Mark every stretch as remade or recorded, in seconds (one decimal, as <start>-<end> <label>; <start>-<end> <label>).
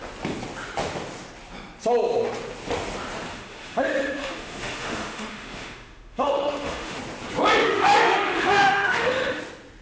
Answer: 0.0-3.3 recorded; 3.3-7.0 remade; 7.0-7.6 recorded; 7.6-9.4 remade; 9.4-9.8 recorded